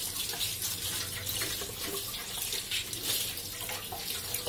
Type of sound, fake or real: real